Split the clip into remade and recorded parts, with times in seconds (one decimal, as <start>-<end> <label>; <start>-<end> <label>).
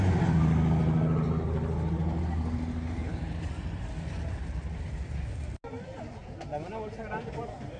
0.0-7.8 recorded